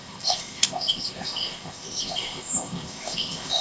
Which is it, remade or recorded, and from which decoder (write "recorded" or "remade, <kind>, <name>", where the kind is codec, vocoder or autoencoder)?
remade, codec, ZipCodec